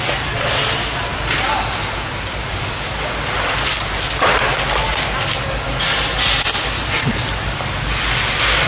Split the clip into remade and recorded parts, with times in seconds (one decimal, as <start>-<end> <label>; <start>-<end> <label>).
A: 0.0-8.7 recorded